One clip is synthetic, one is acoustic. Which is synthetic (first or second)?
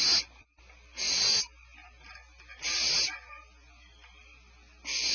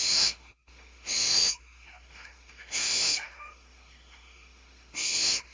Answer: second